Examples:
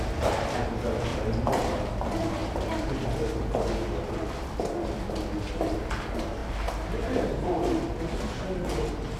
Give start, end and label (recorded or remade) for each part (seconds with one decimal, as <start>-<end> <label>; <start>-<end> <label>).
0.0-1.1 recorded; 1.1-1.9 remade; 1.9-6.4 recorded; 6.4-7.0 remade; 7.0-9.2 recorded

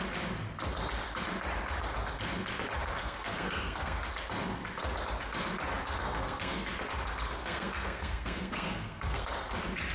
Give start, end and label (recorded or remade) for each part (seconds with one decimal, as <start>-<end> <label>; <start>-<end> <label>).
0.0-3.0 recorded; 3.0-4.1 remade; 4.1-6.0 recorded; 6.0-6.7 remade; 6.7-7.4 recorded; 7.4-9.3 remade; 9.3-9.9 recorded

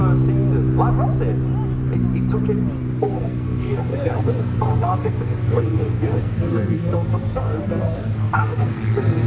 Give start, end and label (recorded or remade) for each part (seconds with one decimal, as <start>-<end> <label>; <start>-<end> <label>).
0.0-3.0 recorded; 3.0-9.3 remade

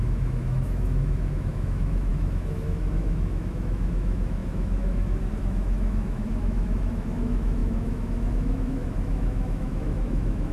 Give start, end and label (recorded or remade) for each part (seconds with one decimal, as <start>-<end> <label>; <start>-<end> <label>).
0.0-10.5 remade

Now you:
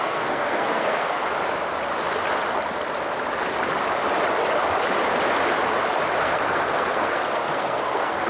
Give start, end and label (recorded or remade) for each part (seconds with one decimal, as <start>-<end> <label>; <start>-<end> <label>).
0.0-1.2 remade; 1.2-6.2 recorded; 6.2-8.3 remade

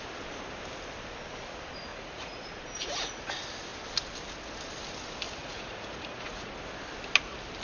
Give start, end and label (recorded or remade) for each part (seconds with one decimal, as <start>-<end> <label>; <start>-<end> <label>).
0.0-1.9 recorded; 1.9-3.3 remade; 3.3-5.4 recorded; 5.4-6.5 remade; 6.5-7.6 recorded

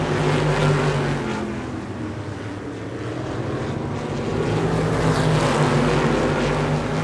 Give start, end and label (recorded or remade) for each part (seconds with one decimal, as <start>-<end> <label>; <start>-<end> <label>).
0.0-7.0 recorded